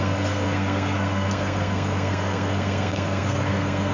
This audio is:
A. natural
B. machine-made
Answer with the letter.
B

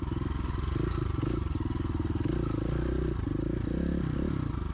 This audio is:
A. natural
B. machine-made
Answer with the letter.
A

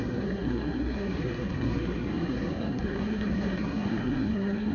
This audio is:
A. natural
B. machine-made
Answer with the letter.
B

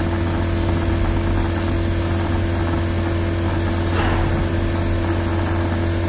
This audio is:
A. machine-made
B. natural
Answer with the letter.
B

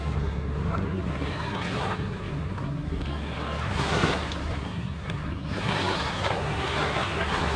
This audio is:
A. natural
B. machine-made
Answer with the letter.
B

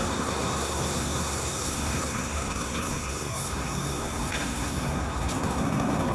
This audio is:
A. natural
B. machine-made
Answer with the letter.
B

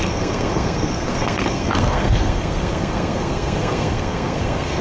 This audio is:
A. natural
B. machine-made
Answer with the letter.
B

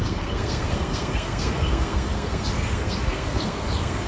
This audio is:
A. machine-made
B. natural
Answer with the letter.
A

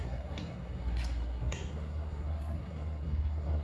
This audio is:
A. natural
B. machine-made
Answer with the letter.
B